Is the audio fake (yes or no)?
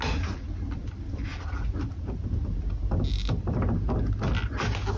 no